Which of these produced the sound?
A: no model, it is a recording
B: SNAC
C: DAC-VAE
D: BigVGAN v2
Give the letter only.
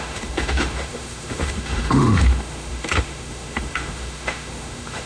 C